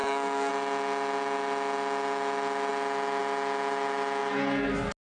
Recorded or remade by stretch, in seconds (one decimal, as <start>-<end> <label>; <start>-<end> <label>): 0.0-0.5 remade; 0.5-5.2 recorded